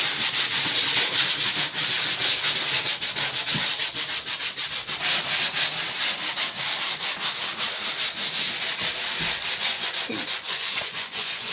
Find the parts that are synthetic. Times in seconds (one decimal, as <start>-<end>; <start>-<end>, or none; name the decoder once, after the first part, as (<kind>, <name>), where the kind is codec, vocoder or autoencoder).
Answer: 9.6-11.5 (vocoder, Vocos)